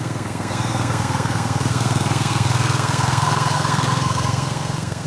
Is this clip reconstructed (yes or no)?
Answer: yes